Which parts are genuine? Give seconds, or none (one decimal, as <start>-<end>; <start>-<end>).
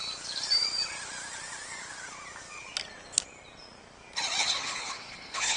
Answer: 0.0-4.4